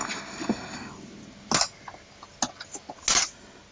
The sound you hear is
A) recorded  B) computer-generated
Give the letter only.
A